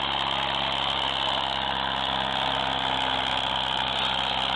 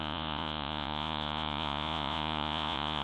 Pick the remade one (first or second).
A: second